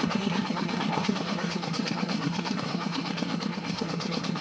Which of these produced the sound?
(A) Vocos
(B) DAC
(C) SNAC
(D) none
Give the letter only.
C